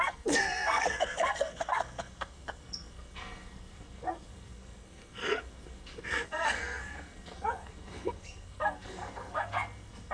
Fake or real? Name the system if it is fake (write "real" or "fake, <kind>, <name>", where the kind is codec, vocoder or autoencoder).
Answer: fake, codec, SNAC